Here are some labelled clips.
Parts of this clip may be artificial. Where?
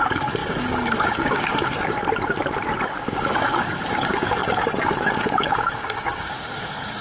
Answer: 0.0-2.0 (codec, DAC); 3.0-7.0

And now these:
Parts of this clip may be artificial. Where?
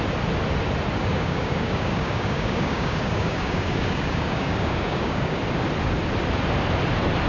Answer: 1.0-5.4 (codec, DAC)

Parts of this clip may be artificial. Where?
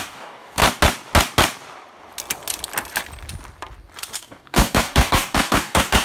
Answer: 0.0-0.6 (codec, DAC); 4.2-6.0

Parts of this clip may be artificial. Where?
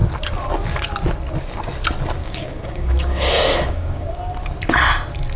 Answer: 2.2-4.1 (codec, DAC)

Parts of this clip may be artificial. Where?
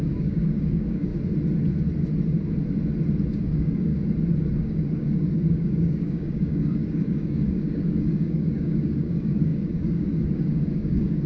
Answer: 0.0-1.1 (codec, DAC); 3.4-3.9; 4.5-11.3